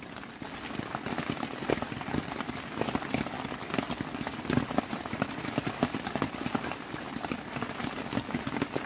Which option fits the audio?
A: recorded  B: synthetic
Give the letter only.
A